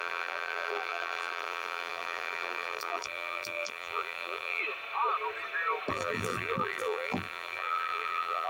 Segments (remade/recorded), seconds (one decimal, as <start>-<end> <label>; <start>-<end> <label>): 0.0-4.6 remade; 4.6-5.9 recorded; 5.9-8.5 remade